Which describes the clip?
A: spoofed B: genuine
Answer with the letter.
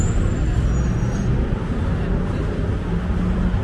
B